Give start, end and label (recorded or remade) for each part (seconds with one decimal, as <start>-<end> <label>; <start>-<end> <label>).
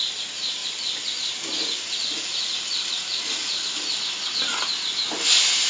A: 0.0-0.6 recorded; 0.6-4.0 remade; 4.0-5.7 recorded